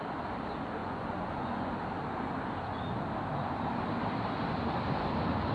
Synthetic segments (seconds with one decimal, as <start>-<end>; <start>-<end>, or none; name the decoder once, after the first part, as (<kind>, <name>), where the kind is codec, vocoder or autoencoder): 0.8-1.7 (vocoder, Vocos)